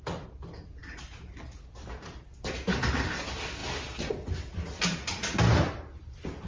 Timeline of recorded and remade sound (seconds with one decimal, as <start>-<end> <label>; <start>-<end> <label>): 0.0-6.5 recorded

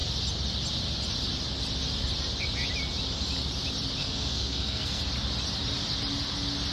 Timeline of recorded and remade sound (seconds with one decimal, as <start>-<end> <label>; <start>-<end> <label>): 0.0-4.0 recorded; 4.0-5.0 remade; 5.0-6.7 recorded